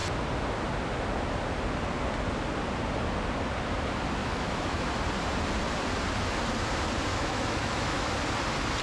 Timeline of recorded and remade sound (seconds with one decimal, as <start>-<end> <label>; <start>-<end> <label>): 0.0-4.2 recorded; 4.2-4.8 remade; 4.8-7.1 recorded; 7.1-8.1 remade; 8.1-8.8 recorded